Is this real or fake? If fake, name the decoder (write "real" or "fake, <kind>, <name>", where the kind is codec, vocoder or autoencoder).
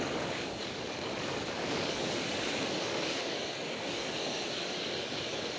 fake, codec, DAC